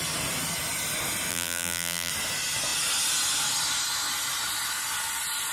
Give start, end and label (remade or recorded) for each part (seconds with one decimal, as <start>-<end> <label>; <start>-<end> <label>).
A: 0.0-1.3 recorded; 1.3-2.1 remade; 2.1-5.5 recorded